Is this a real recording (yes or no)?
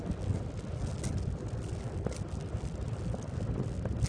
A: yes